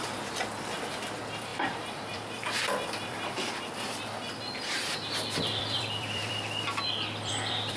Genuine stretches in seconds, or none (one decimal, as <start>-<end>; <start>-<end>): none